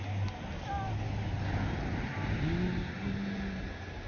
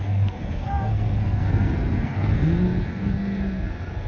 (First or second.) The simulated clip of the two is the second